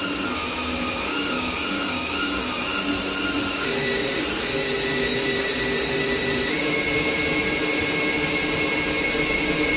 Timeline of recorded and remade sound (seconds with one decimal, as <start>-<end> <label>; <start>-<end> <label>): 0.0-1.1 recorded; 1.1-2.8 remade; 2.8-9.8 recorded